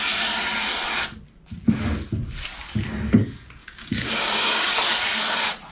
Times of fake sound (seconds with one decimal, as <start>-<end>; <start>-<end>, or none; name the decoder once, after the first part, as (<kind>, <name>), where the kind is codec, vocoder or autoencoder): 3.6-4.7 (codec, DAC)